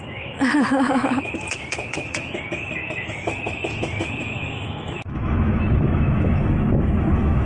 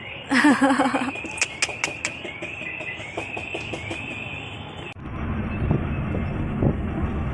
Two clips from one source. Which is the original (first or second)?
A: second